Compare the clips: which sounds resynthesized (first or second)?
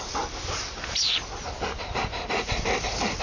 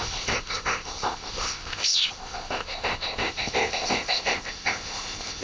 second